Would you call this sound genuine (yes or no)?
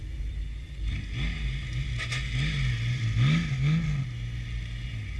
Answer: yes